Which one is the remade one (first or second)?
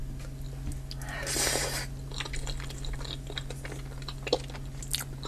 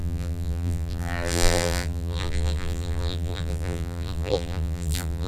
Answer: second